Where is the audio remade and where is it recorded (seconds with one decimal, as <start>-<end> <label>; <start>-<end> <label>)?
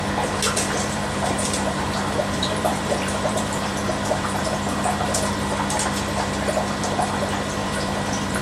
0.0-0.8 recorded; 0.8-5.3 remade; 5.3-7.6 recorded; 7.6-8.4 remade